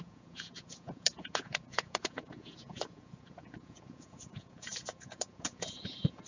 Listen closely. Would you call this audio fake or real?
fake